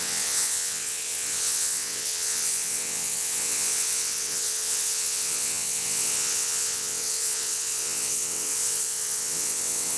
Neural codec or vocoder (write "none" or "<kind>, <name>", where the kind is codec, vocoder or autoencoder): vocoder, WaveNeXt